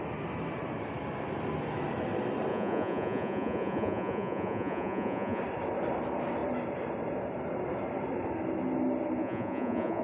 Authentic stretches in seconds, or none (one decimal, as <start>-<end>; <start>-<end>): 0.0-2.5; 5.4-9.2